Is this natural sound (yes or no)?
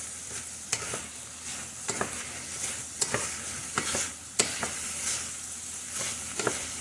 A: yes